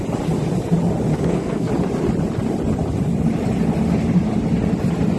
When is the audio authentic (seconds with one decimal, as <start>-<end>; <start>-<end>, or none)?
0.0-1.1; 1.7-5.2